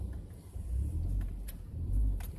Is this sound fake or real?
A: fake